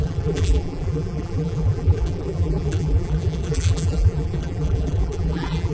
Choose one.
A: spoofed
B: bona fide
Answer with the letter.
A